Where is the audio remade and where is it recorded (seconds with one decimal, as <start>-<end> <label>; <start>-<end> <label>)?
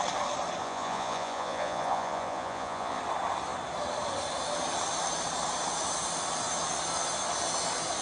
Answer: 0.0-0.6 recorded; 0.6-3.0 remade; 3.0-8.0 recorded